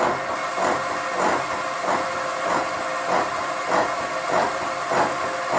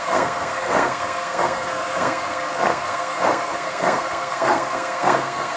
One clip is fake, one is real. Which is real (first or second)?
first